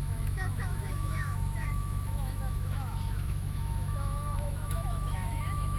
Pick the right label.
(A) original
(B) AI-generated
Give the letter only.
B